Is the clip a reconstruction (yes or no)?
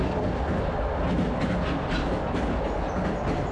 no